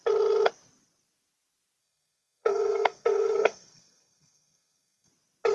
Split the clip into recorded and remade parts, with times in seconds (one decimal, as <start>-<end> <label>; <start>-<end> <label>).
0.0-1.8 recorded; 1.8-5.1 remade; 5.1-5.5 recorded